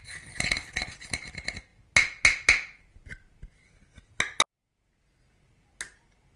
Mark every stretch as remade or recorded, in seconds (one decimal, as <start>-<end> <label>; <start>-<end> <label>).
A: 0.0-6.4 recorded